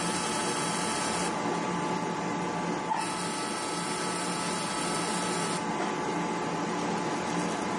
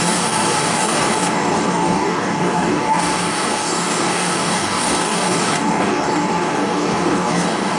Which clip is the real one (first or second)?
first